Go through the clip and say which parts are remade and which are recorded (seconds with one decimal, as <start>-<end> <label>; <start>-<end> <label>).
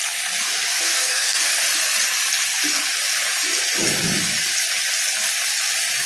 0.0-0.7 recorded; 0.7-1.5 remade; 1.5-6.1 recorded